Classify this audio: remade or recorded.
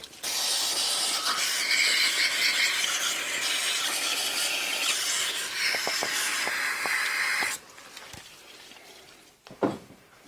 recorded